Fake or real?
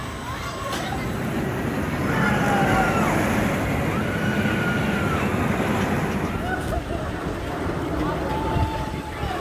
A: real